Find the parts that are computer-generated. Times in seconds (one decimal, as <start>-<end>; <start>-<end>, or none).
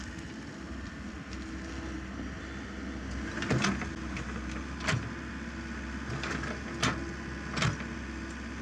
none